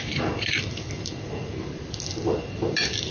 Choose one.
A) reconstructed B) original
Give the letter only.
A